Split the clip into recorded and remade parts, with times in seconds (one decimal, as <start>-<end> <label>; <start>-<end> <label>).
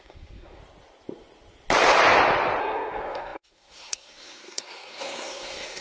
0.0-0.6 remade; 0.6-2.6 recorded; 2.6-5.8 remade